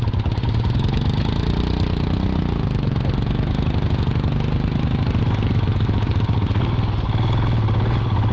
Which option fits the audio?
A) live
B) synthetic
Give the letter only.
A